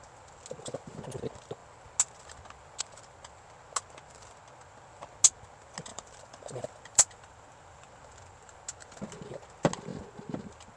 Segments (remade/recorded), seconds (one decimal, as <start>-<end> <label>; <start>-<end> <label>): 0.0-5.9 recorded; 5.9-8.6 remade; 8.6-10.8 recorded